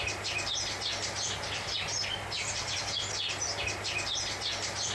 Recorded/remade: recorded